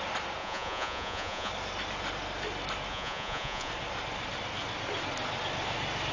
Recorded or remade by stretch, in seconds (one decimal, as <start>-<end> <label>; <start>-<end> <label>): 0.0-0.4 recorded; 0.4-1.5 remade; 1.5-2.9 recorded; 2.9-3.7 remade; 3.7-6.1 recorded